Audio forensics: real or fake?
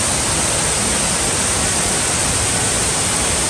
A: real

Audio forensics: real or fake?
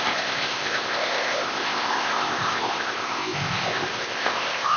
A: fake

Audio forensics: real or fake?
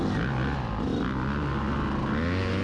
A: real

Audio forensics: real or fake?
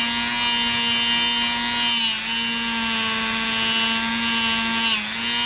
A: real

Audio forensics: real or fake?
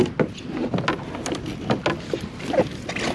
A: real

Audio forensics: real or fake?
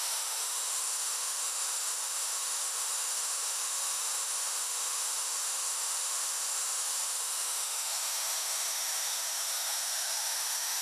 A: fake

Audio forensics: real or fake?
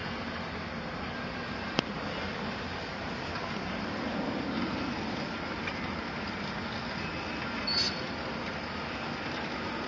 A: real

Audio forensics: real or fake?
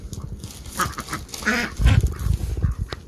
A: real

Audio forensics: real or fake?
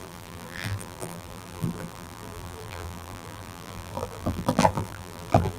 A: fake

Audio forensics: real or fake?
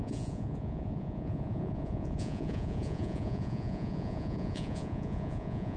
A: fake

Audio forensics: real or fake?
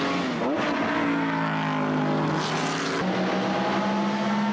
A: real